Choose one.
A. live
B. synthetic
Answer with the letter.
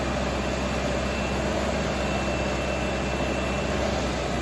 A